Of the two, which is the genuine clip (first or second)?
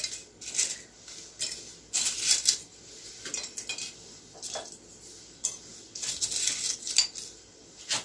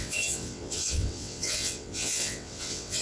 first